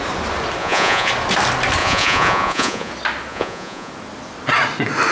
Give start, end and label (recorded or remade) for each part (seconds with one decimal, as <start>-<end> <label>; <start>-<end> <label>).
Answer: 0.0-0.6 recorded; 0.6-1.1 remade; 1.1-1.8 recorded; 1.8-2.9 remade; 2.9-3.3 recorded; 3.3-3.9 remade; 3.9-5.1 recorded